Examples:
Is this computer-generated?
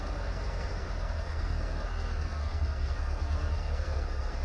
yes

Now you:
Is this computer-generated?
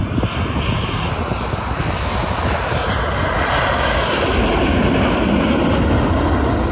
no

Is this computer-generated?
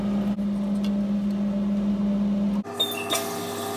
no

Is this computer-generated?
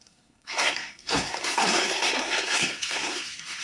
yes